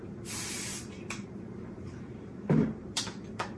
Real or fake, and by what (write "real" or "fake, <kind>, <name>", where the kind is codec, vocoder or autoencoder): fake, vocoder, BigVGAN v2